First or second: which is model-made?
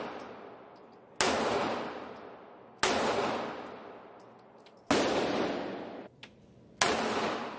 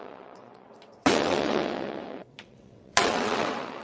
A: second